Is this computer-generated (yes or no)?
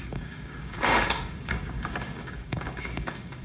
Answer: yes